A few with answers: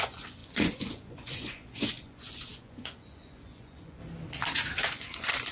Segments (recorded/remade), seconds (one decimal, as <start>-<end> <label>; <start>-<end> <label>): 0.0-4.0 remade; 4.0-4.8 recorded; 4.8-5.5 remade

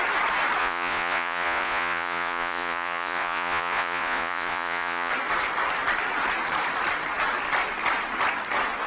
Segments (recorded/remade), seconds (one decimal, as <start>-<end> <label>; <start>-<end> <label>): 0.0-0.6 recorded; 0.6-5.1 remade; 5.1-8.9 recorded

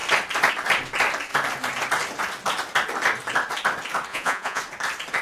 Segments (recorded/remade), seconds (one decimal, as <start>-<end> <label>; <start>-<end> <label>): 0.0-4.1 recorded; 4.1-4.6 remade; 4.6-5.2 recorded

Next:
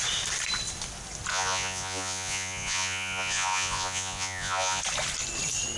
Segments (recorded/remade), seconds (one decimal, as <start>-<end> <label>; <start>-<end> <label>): 0.0-1.3 recorded; 1.3-4.8 remade; 4.8-5.8 recorded

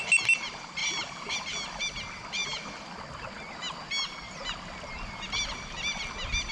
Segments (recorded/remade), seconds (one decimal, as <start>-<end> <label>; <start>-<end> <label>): 0.0-6.5 recorded

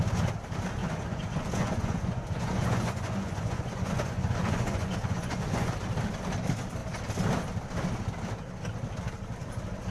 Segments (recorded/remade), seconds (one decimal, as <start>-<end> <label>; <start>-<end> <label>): 0.0-0.8 recorded; 0.8-5.7 remade; 5.7-9.9 recorded

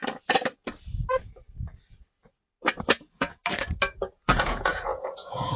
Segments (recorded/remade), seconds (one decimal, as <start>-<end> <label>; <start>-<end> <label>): 0.0-3.0 recorded; 3.0-3.4 remade; 3.4-3.9 recorded; 3.9-5.6 remade

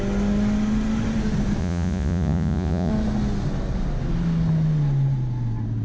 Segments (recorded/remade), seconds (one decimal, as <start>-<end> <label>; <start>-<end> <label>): 0.0-1.6 recorded; 1.6-2.9 remade; 2.9-5.8 recorded